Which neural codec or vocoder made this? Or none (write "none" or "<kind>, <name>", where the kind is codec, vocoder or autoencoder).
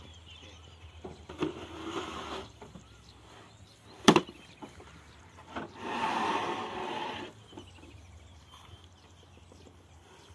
vocoder, BigVGAN v2